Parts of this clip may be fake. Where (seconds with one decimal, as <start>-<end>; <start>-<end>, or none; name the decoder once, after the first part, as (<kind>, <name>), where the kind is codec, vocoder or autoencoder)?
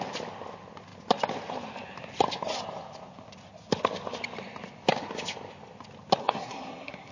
6.2-7.1 (codec, SNAC)